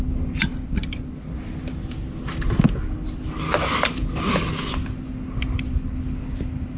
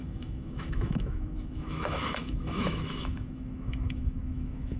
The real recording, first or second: first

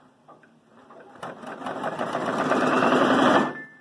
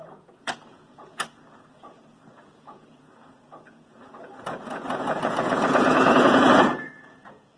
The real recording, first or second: first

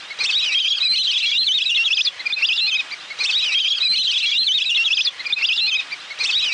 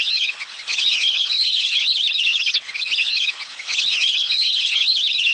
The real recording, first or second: first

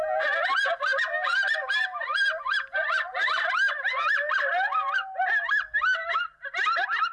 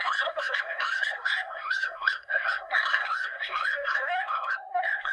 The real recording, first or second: first